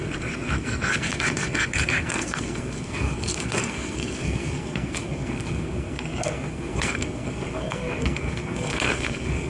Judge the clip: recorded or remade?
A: remade